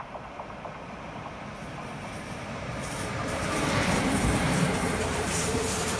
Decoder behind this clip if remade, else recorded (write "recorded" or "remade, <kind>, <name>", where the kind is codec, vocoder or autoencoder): remade, vocoder, BigVGAN v2